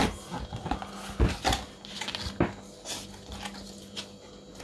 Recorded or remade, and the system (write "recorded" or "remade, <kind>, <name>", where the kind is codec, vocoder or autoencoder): recorded